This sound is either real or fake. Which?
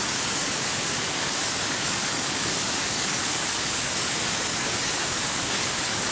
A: fake